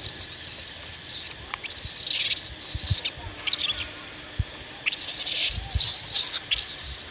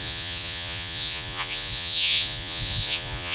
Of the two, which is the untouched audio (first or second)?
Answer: first